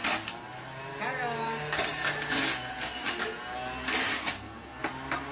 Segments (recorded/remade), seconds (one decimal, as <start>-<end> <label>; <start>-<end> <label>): 0.0-4.3 recorded; 4.3-4.8 remade; 4.8-5.3 recorded